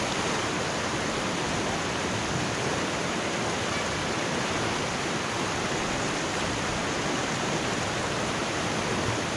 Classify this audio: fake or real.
real